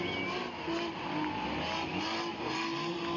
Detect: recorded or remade recorded